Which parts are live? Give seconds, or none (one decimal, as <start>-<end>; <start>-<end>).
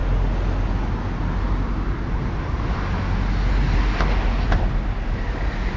0.0-5.8